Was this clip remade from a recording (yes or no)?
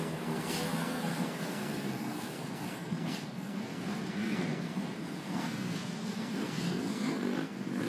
yes